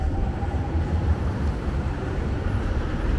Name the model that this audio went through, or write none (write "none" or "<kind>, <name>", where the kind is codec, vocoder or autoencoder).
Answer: vocoder, BigVGAN v2